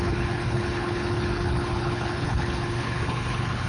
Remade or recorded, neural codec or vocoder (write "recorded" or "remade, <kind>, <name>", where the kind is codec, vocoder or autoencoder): remade, codec, HILCodec